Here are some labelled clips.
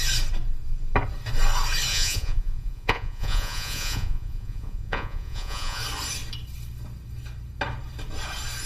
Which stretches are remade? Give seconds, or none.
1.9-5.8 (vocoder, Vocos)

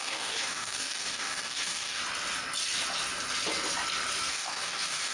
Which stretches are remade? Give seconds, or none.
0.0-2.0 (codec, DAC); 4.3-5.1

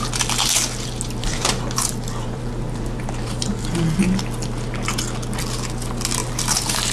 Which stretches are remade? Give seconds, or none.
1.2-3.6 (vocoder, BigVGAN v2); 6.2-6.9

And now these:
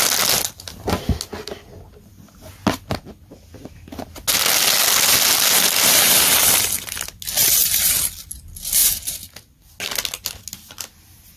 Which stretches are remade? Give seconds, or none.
none

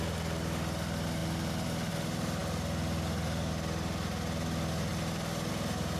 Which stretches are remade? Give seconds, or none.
none

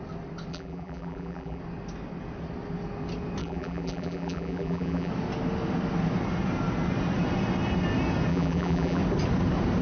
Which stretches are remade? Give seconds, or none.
0.5-1.6 (vocoder, BigVGAN v2); 3.4-5.1; 8.3-9.0